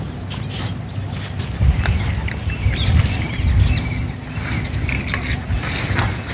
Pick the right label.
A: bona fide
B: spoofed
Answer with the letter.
A